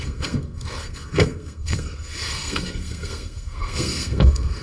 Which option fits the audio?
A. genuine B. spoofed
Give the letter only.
B